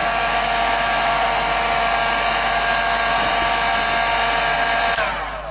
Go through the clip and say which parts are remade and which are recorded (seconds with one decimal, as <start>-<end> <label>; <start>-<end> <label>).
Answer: 0.0-5.5 recorded